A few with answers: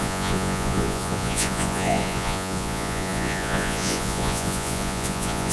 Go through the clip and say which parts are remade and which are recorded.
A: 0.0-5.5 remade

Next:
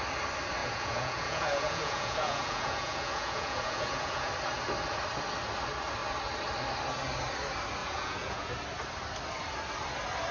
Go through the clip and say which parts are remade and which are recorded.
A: 0.0-0.6 recorded; 0.6-4.3 remade; 4.3-7.8 recorded; 7.8-8.5 remade; 8.5-10.3 recorded

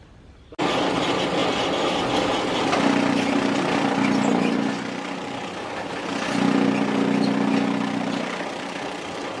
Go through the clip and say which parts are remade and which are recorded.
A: 0.0-9.4 recorded

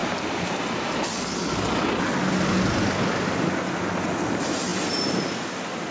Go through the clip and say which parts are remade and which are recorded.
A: 0.0-5.9 recorded

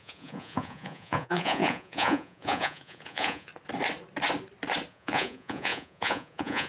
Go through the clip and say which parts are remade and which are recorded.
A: 0.0-3.5 remade; 3.5-4.9 recorded; 4.9-6.7 remade

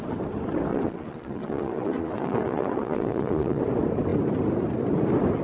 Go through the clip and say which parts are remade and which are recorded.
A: 0.0-0.7 recorded; 0.7-3.6 remade; 3.6-5.4 recorded

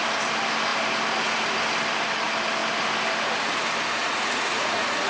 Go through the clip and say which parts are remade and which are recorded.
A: 0.0-4.0 recorded; 4.0-5.1 remade

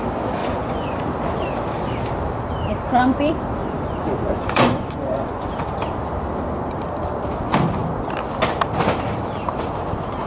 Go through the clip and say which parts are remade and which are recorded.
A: 0.0-0.4 recorded; 0.4-1.1 remade; 1.1-3.6 recorded; 3.6-5.5 remade; 5.5-10.3 recorded